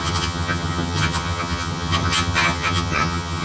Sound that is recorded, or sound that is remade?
remade